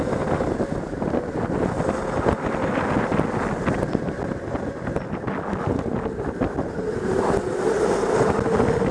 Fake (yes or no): no